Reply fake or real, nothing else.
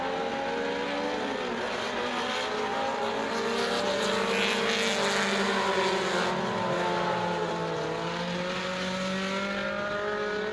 real